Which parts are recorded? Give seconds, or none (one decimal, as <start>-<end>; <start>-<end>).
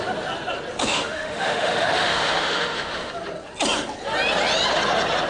0.0-0.8; 3.1-5.3